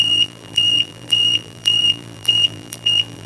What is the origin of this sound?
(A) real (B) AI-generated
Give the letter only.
B